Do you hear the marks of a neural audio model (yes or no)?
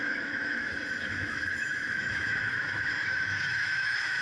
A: yes